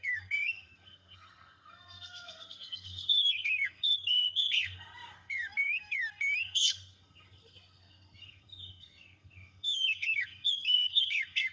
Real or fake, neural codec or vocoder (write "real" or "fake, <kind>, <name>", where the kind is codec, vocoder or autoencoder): fake, codec, SNAC